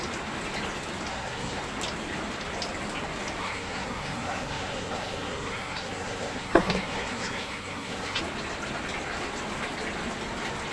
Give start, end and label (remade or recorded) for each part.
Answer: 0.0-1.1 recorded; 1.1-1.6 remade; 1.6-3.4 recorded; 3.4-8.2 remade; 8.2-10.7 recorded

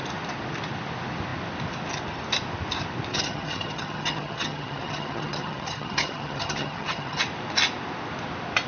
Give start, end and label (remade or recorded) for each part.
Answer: 0.0-3.1 recorded; 3.1-7.2 remade; 7.2-8.7 recorded

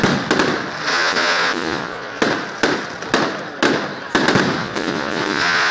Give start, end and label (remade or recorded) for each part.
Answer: 0.0-0.9 recorded; 0.9-2.2 remade; 2.2-4.6 recorded; 4.6-5.7 remade